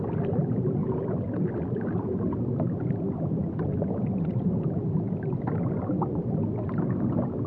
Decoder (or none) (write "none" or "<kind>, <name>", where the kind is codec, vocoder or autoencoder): none